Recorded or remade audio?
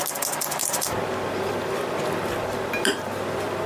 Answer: recorded